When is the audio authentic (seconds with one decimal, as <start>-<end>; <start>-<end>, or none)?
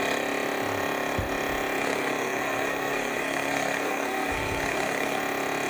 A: 0.0-1.8; 5.2-5.7